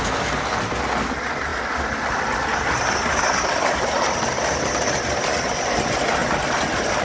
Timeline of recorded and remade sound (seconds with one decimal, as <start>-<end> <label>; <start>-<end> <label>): 0.0-7.0 recorded

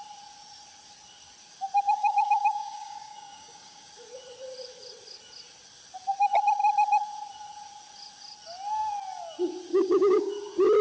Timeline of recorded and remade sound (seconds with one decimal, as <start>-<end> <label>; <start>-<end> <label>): 0.0-2.0 recorded; 2.0-3.9 remade; 3.9-9.7 recorded; 9.7-10.3 remade; 10.3-10.8 recorded

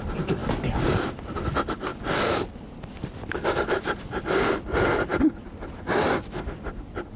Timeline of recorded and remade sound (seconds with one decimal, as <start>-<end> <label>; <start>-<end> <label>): 0.0-1.9 remade; 1.9-2.5 recorded; 2.5-5.1 remade; 5.1-6.8 recorded; 6.8-7.2 remade

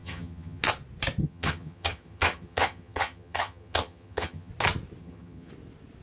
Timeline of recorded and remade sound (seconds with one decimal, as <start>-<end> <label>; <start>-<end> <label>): 0.0-0.6 remade; 0.6-1.2 recorded; 1.2-4.5 remade; 4.5-5.0 recorded; 5.0-5.5 remade; 5.5-6.0 recorded

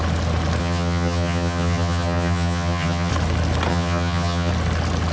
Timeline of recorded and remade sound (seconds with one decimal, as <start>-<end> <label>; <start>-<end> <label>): 0.0-0.6 recorded; 0.6-3.1 remade; 3.1-3.7 recorded; 3.7-4.5 remade; 4.5-5.1 recorded

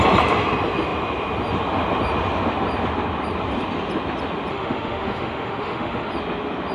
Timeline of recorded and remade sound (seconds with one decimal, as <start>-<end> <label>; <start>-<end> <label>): 0.0-4.5 recorded; 4.5-6.1 remade; 6.1-6.7 recorded